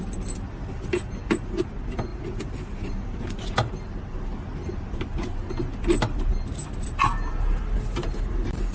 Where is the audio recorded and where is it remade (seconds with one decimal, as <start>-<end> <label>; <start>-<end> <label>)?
0.0-8.7 recorded